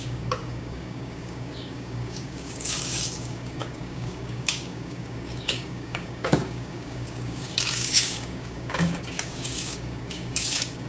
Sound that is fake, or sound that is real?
fake